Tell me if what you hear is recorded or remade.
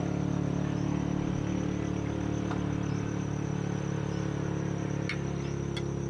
recorded